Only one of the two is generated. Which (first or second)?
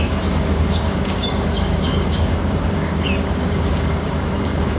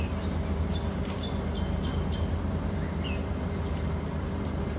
first